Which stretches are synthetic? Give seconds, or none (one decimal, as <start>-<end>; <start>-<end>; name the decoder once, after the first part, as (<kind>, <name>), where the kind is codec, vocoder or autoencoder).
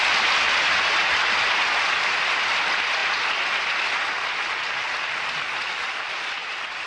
none